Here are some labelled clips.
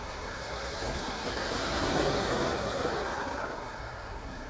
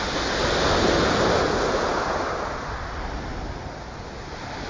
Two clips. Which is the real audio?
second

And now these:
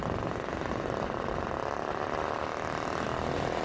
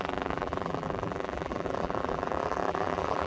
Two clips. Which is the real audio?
first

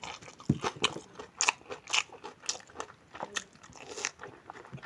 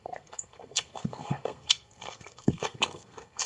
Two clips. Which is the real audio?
first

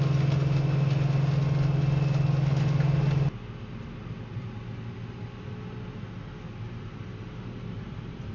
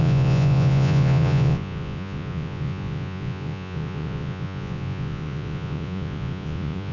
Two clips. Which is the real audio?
first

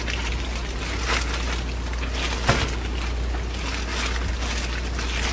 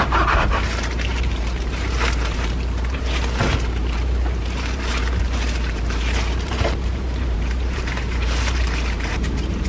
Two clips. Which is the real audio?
first